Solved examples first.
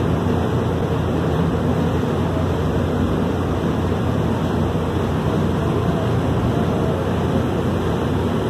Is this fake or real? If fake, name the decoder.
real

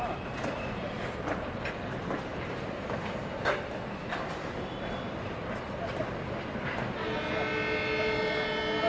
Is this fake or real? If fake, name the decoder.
real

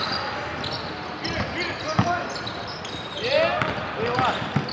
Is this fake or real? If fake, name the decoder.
real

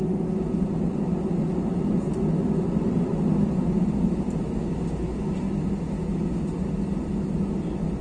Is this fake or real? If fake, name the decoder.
real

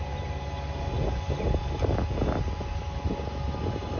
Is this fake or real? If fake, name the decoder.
real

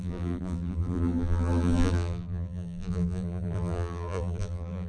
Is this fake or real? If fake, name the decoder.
fake, vocoder, BigVGAN v2